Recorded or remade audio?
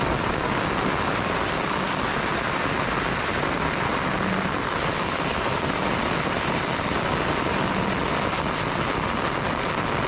recorded